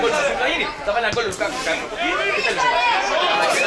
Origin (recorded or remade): recorded